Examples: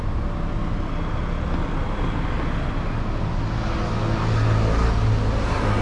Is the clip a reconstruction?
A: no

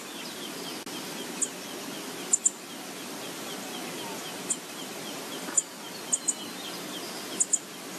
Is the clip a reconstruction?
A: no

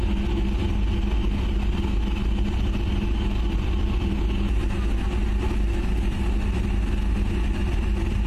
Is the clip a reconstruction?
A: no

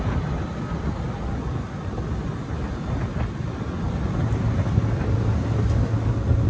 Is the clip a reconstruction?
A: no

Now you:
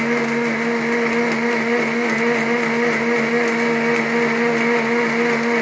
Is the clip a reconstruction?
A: no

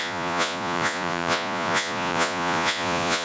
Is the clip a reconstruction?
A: yes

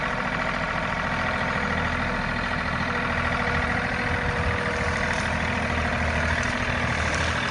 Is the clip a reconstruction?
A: no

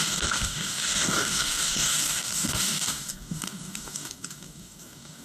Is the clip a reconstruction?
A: yes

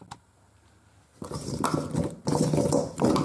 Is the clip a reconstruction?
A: no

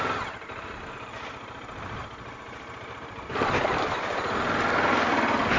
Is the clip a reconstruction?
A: no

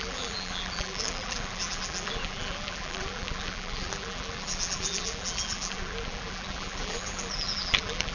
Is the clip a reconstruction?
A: yes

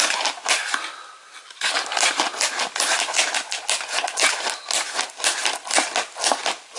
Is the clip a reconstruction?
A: no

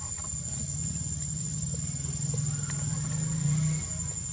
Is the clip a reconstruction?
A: no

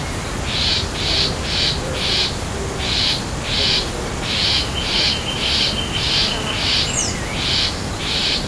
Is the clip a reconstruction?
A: no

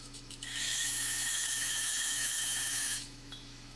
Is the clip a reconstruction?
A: yes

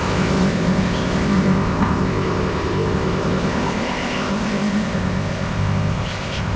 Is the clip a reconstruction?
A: yes